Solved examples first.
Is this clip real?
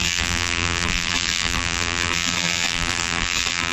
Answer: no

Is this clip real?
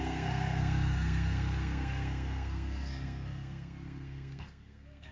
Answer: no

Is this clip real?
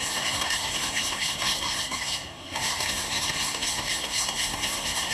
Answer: no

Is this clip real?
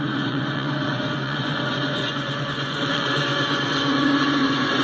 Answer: no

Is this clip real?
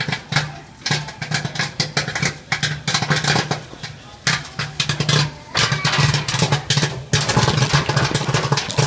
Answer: yes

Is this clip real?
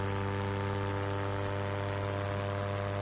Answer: yes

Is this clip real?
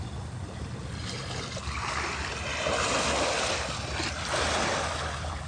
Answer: yes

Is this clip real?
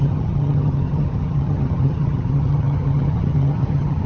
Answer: no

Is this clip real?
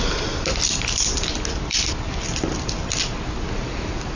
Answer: yes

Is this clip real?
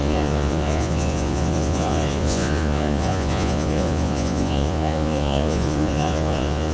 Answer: no